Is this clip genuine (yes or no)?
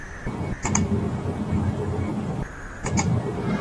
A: yes